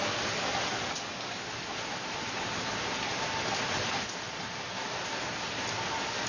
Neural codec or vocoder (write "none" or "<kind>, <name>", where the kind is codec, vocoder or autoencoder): none